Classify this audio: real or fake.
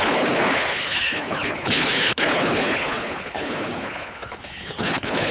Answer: fake